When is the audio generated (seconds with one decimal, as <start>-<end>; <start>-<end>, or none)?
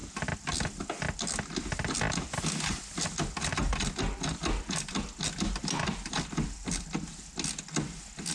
none